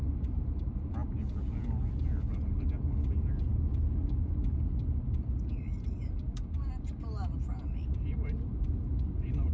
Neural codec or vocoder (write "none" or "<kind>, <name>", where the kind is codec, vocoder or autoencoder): none